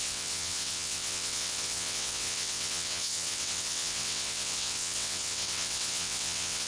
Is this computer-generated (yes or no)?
yes